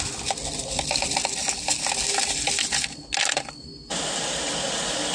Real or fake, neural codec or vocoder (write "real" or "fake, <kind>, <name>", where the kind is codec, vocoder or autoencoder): real